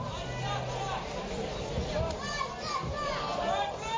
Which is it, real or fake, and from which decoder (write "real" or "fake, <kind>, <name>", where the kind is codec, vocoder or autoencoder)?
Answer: real